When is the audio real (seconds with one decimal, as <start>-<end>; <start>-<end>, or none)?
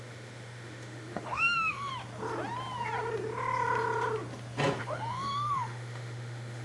1.9-4.8